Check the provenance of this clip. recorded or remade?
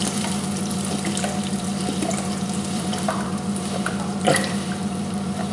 remade